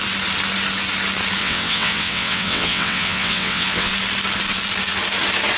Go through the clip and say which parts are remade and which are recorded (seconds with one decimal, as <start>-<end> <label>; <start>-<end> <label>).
0.0-1.4 recorded; 1.4-3.9 remade; 3.9-5.6 recorded